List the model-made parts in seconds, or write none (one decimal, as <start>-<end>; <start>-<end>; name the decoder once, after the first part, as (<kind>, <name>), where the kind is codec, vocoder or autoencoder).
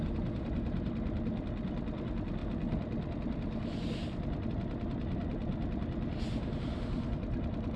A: none